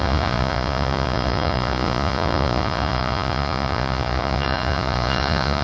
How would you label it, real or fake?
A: fake